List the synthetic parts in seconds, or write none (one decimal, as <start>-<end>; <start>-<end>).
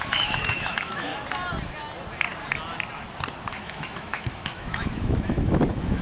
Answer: 0.0-1.1; 3.5-6.0